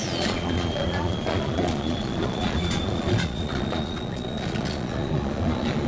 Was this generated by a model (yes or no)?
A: yes